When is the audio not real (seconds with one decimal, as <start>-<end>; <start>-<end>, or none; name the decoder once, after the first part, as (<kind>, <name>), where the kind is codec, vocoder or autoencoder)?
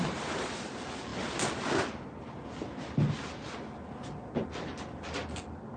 0.0-0.7 (vocoder, BigVGAN v2)